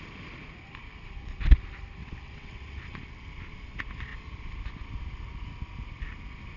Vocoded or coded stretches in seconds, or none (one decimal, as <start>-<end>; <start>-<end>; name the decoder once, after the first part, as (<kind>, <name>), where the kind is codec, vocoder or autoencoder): 2.0-3.0 (vocoder, WaveNeXt)